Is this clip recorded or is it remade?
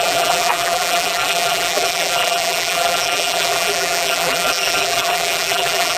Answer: remade